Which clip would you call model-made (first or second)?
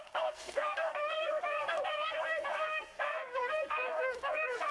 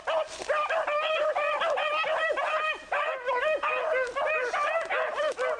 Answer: first